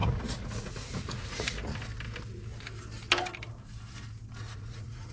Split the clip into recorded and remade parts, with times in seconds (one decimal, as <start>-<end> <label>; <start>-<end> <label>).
0.0-1.6 remade; 1.6-4.4 recorded; 4.4-5.1 remade